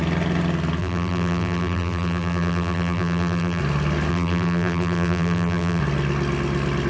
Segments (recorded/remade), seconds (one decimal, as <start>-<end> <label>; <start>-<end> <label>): 0.0-0.8 recorded; 0.8-3.6 remade; 3.6-4.1 recorded; 4.1-5.8 remade; 5.8-6.9 recorded